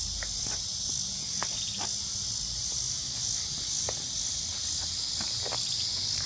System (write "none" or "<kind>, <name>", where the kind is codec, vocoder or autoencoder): none